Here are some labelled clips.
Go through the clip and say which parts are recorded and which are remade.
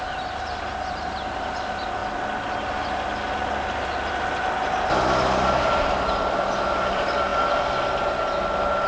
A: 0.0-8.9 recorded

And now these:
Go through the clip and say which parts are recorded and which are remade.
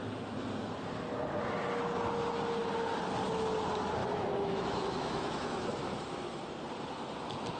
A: 0.0-4.0 recorded; 4.0-6.4 remade; 6.4-7.6 recorded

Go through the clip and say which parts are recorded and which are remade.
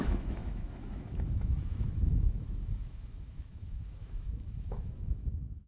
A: 0.0-5.7 remade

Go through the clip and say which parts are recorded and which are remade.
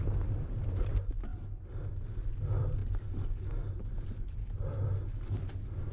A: 0.0-5.9 recorded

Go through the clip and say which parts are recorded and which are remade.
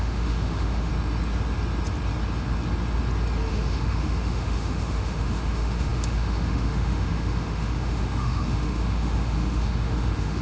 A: 0.0-0.9 remade; 0.9-3.5 recorded; 3.5-10.4 remade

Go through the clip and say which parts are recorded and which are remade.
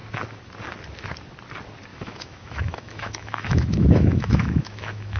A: 0.0-1.9 recorded; 1.9-5.2 remade